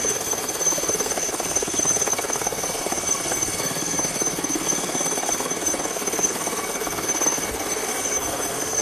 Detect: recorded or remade remade